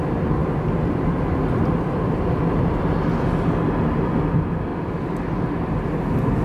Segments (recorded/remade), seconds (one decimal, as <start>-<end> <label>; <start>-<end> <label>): 0.0-6.4 recorded